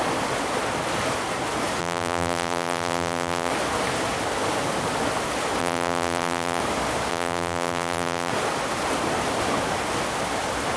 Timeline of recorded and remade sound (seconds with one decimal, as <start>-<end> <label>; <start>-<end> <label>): 0.0-1.8 recorded; 1.8-3.5 remade; 3.5-5.6 recorded; 5.6-6.6 remade; 6.6-7.1 recorded; 7.1-8.3 remade; 8.3-10.8 recorded